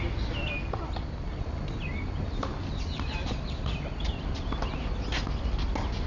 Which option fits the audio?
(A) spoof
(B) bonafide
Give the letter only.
B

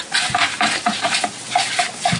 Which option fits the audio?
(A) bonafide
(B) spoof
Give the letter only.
A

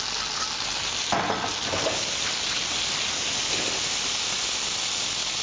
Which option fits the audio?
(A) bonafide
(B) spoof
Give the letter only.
A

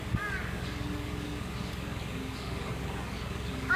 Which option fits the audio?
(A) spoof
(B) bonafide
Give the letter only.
A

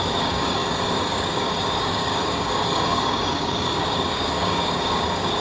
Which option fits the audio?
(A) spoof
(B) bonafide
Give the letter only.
A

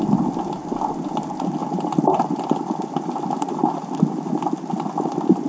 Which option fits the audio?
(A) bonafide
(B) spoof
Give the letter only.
A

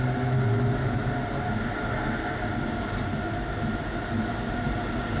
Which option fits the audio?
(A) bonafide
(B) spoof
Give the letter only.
A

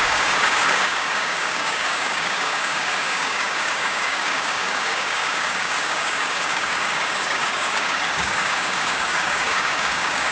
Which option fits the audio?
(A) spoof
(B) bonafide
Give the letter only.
A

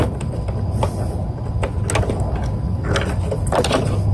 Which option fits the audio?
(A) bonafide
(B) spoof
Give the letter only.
A